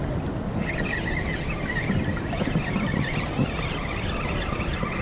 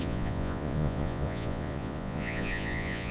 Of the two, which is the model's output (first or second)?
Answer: second